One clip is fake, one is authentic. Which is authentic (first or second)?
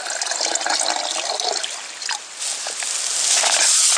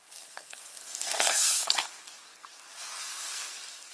first